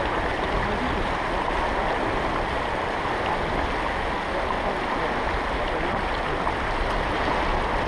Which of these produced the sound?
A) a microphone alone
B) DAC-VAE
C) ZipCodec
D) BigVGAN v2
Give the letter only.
A